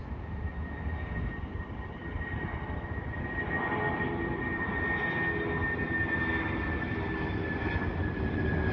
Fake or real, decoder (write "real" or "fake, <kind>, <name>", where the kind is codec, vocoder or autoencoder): real